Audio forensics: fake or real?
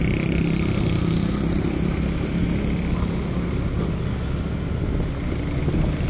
real